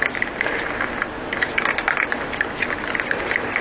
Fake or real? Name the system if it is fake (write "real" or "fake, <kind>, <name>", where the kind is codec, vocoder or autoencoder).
real